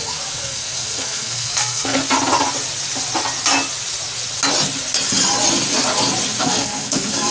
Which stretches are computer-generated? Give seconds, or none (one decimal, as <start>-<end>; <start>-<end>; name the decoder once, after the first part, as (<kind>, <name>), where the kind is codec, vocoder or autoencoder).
0.0-2.0 (codec, SNAC); 6.4-7.3